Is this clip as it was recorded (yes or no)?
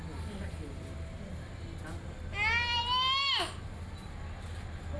yes